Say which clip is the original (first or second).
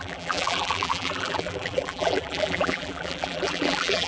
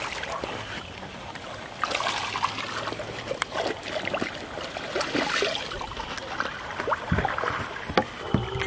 second